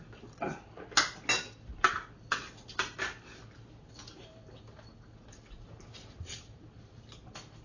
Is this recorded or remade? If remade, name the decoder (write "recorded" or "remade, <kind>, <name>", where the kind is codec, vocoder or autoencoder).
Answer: recorded